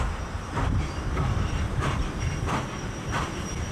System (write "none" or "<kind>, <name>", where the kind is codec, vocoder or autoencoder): vocoder, BigVGAN v2